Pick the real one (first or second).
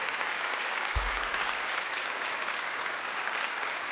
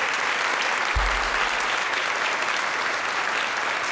second